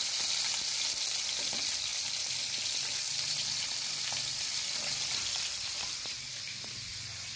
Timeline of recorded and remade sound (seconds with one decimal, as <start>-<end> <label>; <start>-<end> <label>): 0.0-7.4 recorded